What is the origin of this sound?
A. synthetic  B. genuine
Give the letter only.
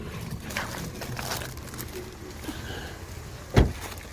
B